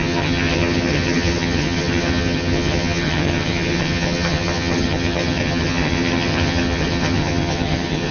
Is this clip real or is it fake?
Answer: fake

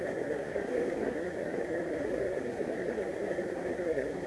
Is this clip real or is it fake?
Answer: fake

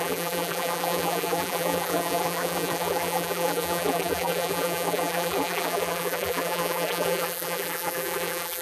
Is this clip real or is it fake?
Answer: fake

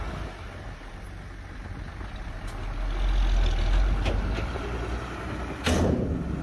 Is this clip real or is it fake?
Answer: real